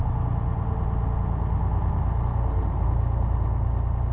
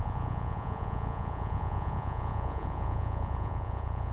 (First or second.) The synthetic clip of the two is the second